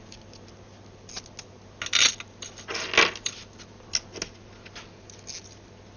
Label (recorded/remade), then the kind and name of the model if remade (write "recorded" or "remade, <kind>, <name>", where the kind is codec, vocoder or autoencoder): recorded